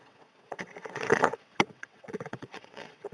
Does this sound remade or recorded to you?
remade